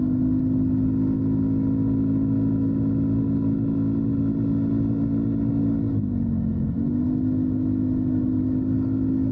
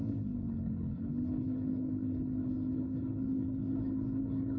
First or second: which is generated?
second